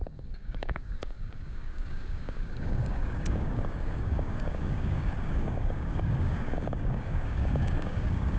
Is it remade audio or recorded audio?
remade